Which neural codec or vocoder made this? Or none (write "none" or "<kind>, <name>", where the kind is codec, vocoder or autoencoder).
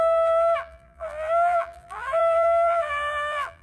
vocoder, BigVGAN v2